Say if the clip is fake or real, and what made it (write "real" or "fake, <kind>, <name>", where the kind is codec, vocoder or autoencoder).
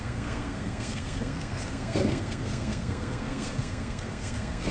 fake, codec, SNAC